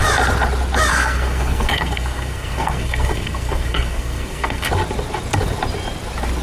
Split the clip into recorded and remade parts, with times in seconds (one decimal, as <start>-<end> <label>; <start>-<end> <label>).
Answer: 0.0-0.9 recorded; 0.9-4.7 remade; 4.7-6.4 recorded